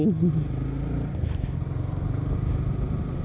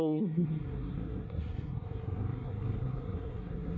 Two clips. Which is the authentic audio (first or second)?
first